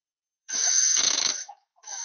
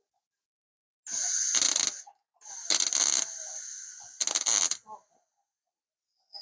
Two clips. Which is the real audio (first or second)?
second